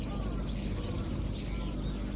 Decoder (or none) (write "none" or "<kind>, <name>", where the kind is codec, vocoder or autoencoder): none